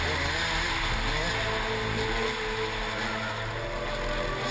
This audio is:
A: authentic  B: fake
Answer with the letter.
A